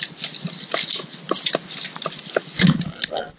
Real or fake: real